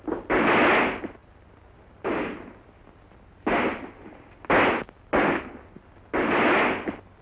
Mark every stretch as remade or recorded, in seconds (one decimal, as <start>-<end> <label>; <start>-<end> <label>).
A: 0.0-7.2 recorded